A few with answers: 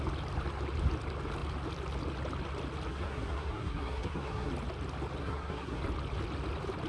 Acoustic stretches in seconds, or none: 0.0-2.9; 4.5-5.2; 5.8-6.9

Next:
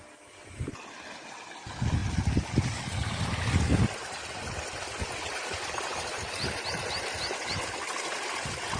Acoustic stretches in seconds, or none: 0.0-8.8

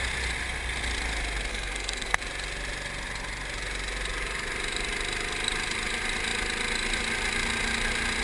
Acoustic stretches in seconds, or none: 0.0-1.5; 2.2-8.2

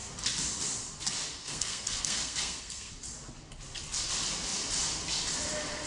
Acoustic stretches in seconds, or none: 0.0-1.4; 2.9-5.9

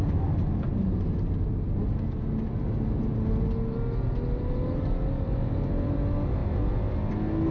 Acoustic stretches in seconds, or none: 0.0-7.5

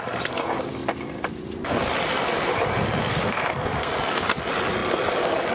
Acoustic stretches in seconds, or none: 0.0-3.0; 3.9-5.5

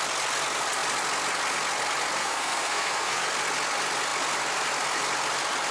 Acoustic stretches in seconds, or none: 0.0-2.2; 3.2-5.7